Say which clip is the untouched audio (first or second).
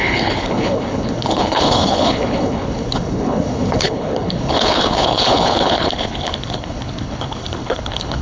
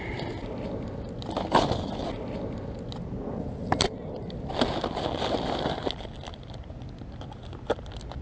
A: second